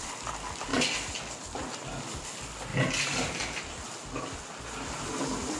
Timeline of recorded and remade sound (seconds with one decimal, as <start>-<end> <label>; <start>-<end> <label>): 0.0-2.7 recorded; 2.7-3.6 remade; 3.6-5.6 recorded